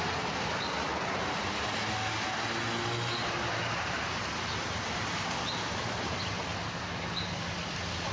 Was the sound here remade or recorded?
recorded